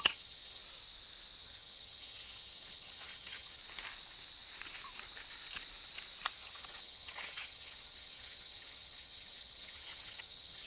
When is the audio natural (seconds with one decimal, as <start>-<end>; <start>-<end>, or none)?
0.6-1.4; 3.6-6.3